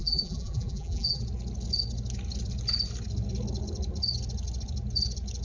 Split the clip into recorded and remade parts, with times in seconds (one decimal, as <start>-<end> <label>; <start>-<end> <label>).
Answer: 0.0-1.2 remade; 1.2-5.4 recorded